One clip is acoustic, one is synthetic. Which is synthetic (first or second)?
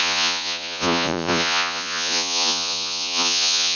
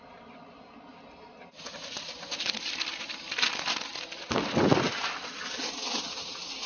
first